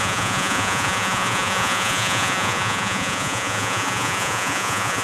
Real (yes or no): no